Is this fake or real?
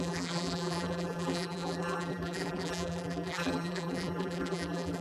fake